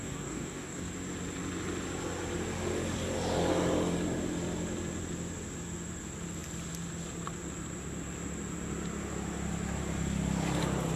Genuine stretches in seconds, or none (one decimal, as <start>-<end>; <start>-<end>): 0.9-11.0